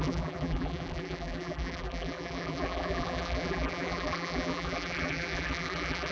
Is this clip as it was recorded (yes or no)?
no